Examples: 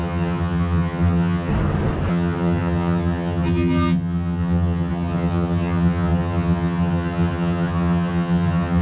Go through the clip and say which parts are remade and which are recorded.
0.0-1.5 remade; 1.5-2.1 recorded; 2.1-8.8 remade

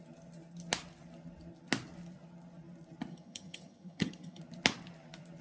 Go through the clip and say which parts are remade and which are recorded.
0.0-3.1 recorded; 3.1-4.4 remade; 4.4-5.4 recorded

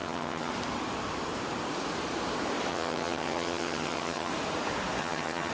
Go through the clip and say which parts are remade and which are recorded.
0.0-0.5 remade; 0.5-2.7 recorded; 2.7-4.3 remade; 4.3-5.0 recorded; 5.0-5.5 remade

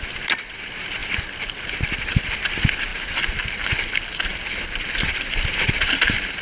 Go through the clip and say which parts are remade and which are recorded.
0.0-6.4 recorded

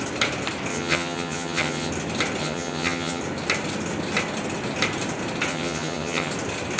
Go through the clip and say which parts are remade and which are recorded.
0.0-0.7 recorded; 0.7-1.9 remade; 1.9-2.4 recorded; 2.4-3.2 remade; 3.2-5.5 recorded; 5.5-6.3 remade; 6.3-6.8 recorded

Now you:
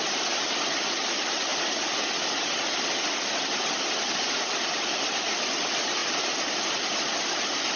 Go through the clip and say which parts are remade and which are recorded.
0.0-7.8 recorded